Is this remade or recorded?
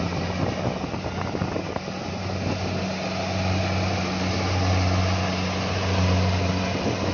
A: recorded